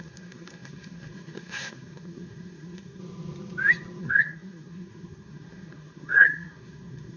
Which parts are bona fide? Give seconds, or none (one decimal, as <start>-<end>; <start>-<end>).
3.0-4.0

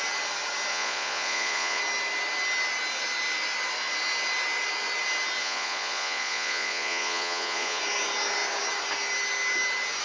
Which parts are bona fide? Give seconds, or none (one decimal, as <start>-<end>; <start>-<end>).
0.0-0.7; 1.8-5.4; 7.8-10.0